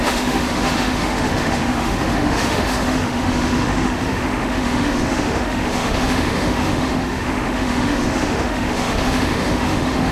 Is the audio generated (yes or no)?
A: yes